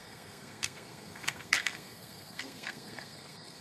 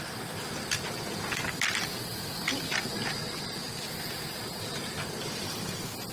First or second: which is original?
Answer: second